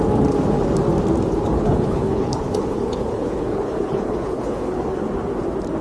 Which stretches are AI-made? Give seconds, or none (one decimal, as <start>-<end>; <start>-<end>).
1.5-5.0